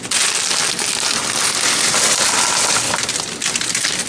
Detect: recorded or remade recorded